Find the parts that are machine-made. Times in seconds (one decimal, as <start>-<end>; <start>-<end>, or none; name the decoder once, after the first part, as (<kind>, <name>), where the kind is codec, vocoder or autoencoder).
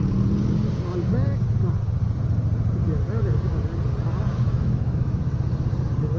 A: 4.3-5.2 (autoencoder, DAC-VAE)